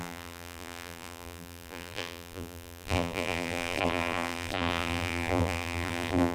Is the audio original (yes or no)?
no